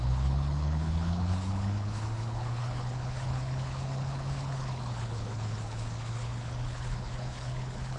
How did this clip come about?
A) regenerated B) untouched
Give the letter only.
A